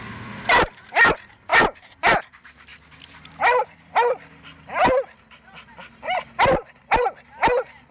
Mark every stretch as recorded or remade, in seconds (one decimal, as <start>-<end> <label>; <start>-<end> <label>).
0.0-1.5 recorded; 1.5-2.1 remade; 2.1-7.9 recorded